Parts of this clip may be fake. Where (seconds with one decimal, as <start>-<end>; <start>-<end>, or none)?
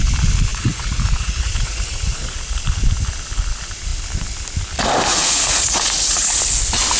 0.5-2.6; 5.1-6.4